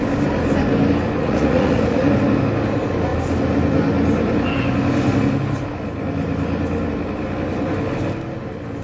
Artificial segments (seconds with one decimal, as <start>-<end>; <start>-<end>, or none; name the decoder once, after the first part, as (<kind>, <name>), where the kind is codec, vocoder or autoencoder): 1.2-2.1 (vocoder, Vocos)